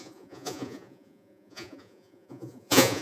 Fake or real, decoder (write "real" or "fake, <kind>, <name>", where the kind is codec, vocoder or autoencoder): fake, vocoder, Vocos